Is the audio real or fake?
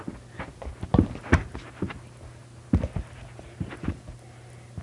real